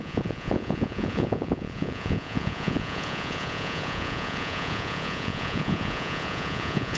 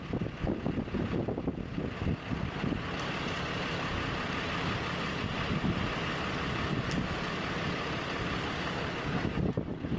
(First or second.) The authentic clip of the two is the second